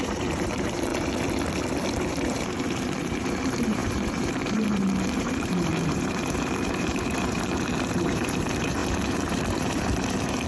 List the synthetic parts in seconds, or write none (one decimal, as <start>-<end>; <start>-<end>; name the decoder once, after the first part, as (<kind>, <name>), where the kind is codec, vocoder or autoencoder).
0.0-0.9 (vocoder, BigVGAN v2); 2.1-10.5